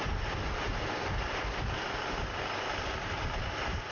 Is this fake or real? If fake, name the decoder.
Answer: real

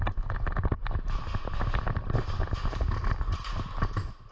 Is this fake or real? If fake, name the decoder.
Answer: real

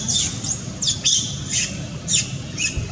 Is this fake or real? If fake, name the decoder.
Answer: real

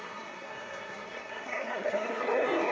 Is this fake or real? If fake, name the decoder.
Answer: fake, codec, SNAC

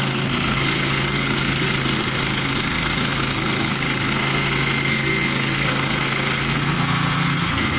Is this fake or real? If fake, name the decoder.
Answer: fake, codec, SNAC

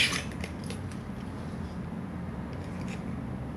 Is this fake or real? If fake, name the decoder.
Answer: real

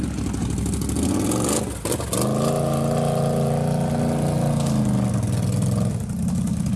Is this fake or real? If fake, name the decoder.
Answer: real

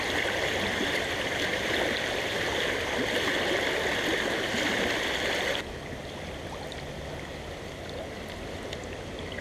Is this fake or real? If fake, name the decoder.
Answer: real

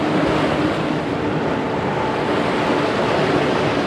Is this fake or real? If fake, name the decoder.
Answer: real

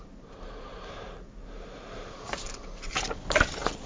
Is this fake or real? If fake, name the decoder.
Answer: real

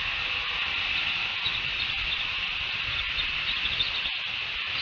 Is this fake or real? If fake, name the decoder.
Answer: real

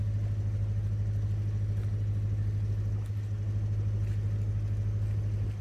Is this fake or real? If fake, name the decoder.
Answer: real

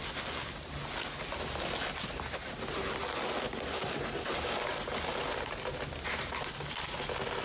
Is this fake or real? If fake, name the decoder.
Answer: real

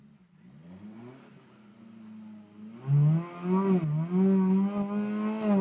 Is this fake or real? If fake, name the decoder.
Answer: real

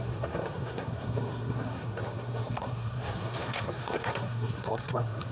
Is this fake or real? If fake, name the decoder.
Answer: fake, codec, SNAC